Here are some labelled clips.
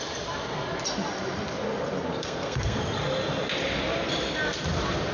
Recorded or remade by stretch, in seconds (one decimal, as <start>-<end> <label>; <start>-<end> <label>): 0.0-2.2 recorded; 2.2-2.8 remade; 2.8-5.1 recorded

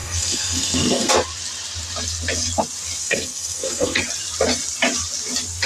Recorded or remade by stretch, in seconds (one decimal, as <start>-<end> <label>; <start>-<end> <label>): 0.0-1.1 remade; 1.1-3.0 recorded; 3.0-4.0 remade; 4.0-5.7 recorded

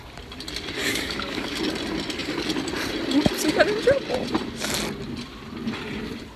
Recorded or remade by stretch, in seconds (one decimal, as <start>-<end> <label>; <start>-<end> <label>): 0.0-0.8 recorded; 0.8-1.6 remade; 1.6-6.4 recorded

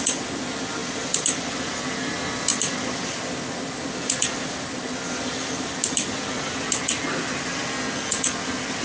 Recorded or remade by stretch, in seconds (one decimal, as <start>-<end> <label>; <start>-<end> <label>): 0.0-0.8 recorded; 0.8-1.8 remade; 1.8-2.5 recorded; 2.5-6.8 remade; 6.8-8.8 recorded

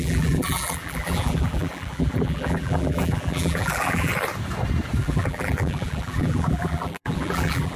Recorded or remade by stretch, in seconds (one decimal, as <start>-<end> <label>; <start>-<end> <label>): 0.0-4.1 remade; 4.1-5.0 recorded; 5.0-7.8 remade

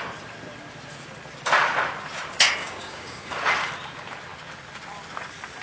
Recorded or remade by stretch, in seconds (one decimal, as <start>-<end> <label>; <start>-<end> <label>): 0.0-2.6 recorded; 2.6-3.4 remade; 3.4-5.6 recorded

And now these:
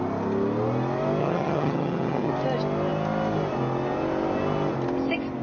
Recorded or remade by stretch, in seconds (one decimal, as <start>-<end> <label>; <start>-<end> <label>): 0.0-1.2 recorded; 1.2-2.3 remade; 2.3-5.4 recorded

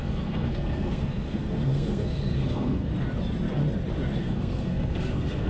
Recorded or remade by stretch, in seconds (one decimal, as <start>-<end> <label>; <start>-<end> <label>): 0.0-2.9 remade; 2.9-4.2 recorded; 4.2-5.5 remade